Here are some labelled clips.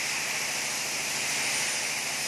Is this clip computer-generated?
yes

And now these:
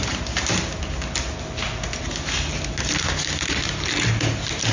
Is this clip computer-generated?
no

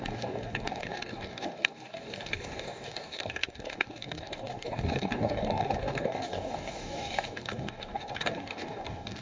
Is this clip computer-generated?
yes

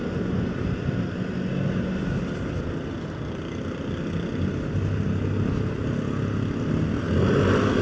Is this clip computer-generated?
no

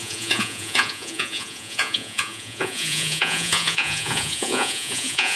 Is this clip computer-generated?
yes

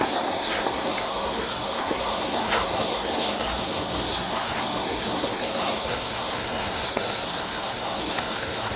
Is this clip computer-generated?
yes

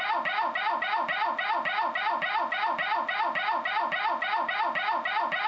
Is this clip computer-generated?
no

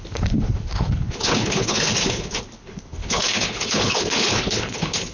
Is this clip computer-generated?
yes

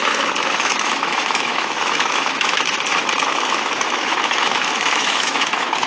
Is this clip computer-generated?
yes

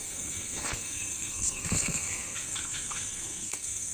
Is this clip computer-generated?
yes